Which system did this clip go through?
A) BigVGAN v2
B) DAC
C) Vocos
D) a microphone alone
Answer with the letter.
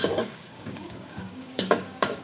B